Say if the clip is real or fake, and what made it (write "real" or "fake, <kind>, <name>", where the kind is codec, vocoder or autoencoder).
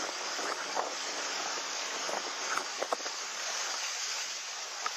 fake, codec, DAC